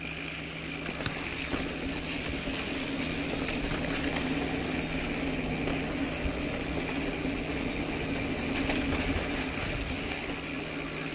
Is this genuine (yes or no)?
yes